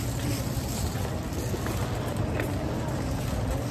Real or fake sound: real